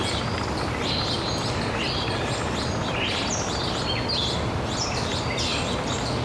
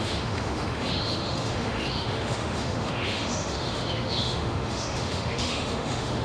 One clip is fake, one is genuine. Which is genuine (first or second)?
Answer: first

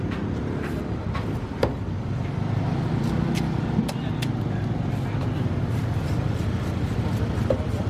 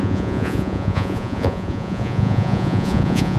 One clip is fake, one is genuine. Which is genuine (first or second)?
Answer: first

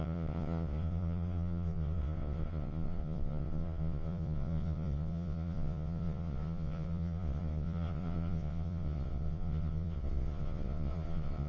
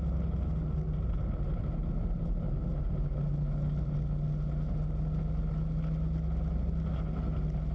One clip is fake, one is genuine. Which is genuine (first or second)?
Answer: second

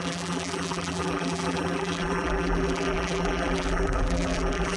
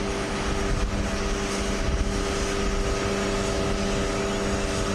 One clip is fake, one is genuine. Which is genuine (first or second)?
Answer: second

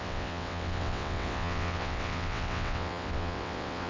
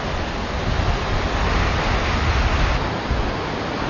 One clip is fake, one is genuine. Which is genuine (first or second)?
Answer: second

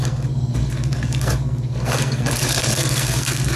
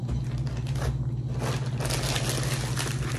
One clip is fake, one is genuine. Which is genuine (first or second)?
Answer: second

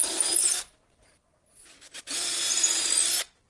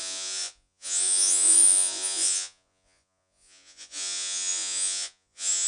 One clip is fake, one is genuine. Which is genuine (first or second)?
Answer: first